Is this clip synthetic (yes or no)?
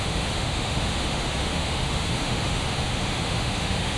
yes